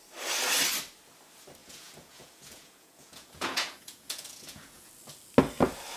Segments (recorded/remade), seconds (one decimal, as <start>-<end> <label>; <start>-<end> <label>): 0.0-1.6 recorded; 1.6-4.9 remade; 4.9-6.0 recorded